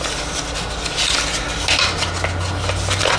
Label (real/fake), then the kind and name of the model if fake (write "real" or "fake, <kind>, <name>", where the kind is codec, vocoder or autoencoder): real